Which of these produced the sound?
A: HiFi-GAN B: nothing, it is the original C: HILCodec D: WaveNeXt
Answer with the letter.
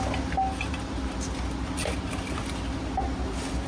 B